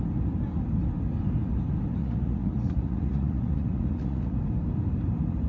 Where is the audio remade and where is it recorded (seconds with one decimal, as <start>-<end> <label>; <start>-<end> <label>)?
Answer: 0.0-2.0 recorded; 2.0-4.4 remade; 4.4-5.5 recorded